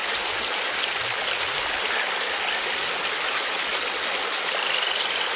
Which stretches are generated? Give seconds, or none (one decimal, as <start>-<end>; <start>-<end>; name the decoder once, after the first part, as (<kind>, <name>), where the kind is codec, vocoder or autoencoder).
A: none